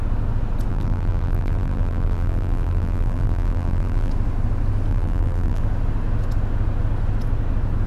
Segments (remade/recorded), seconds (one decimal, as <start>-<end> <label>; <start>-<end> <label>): 0.0-0.7 recorded; 0.7-4.1 remade; 4.1-4.9 recorded; 4.9-5.6 remade; 5.6-7.9 recorded